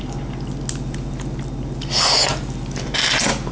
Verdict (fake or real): real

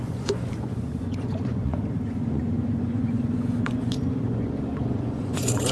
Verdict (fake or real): fake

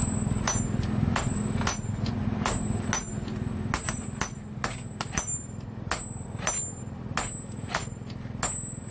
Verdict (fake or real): real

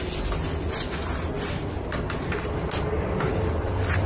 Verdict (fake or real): real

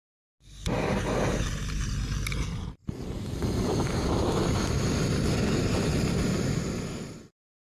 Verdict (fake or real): real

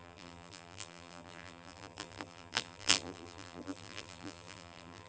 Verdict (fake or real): fake